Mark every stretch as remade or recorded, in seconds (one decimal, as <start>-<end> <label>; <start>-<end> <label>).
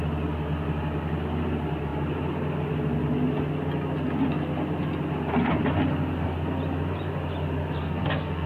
0.0-7.8 recorded; 7.8-8.5 remade